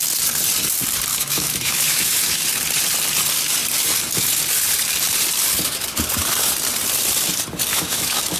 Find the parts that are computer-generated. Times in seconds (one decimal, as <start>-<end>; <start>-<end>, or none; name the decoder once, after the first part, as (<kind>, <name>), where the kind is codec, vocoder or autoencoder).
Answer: 1.1-2.4 (autoencoder, DAC-VAE); 7.7-8.4